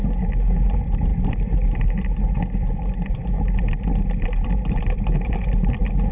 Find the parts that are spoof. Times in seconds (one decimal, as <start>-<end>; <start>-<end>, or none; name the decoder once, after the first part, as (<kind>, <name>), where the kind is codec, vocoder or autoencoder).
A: none